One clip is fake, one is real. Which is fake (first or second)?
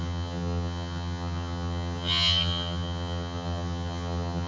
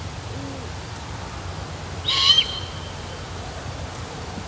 first